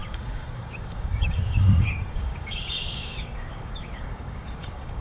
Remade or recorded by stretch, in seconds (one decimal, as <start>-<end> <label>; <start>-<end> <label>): 0.0-5.0 remade